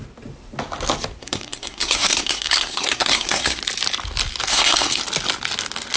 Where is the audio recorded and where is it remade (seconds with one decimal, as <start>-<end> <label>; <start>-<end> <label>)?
0.0-1.2 recorded; 1.2-3.6 remade; 3.6-4.5 recorded; 4.5-5.0 remade; 5.0-6.0 recorded